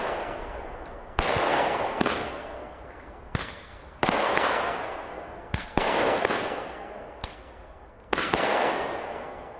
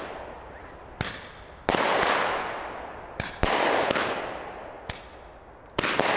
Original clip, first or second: second